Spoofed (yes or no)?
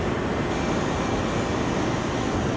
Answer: no